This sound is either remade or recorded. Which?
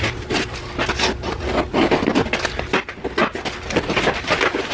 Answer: recorded